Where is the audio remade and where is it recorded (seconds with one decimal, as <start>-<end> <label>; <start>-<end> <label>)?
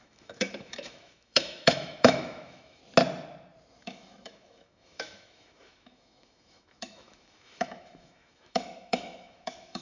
0.0-2.8 remade; 2.8-3.8 recorded; 3.8-9.8 remade